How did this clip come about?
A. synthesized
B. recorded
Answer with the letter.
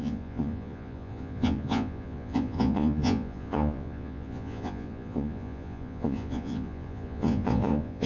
A